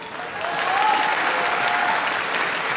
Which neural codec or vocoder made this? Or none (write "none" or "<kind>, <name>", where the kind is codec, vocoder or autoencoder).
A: none